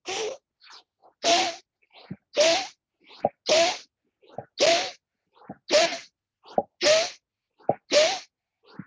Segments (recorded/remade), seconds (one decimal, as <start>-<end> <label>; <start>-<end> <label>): 0.0-8.9 recorded